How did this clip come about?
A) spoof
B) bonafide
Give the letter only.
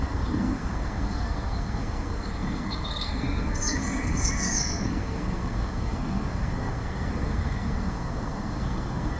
A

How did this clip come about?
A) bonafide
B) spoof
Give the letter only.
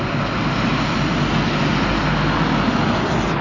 A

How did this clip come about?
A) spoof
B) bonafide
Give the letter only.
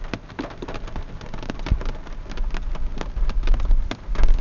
B